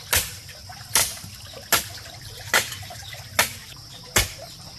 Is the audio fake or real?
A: real